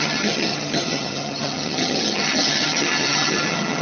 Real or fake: fake